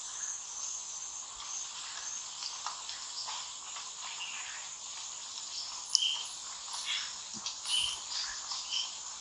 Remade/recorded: recorded